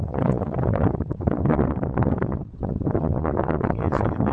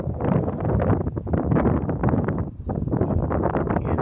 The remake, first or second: first